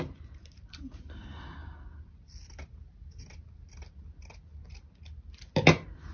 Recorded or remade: recorded